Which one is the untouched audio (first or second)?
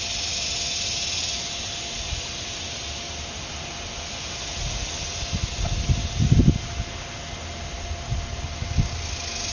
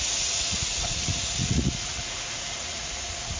first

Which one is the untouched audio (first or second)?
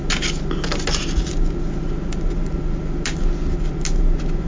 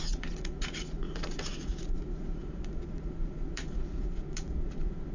first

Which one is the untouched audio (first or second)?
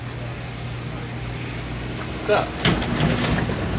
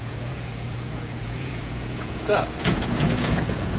first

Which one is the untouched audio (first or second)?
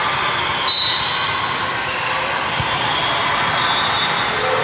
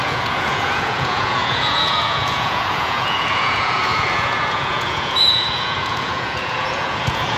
first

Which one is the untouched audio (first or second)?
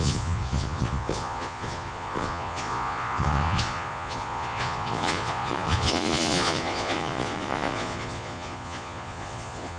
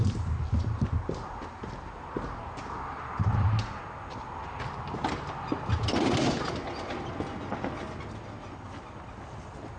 second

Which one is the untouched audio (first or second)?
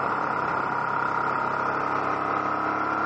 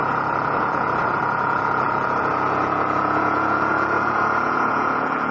first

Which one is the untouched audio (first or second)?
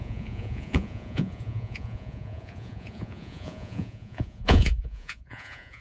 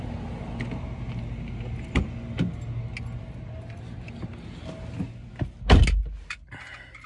second